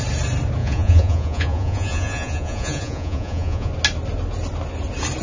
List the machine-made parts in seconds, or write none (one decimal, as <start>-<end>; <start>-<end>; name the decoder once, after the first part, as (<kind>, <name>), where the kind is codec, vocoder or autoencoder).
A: 0.6-3.7 (vocoder, Vocos)